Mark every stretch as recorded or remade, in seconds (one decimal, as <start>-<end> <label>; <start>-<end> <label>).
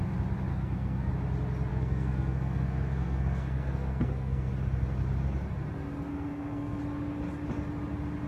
0.0-0.5 recorded; 0.5-1.1 remade; 1.1-1.7 recorded; 1.7-4.5 remade; 4.5-6.1 recorded; 6.1-6.8 remade; 6.8-8.3 recorded